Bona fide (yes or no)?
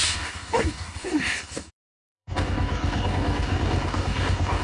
no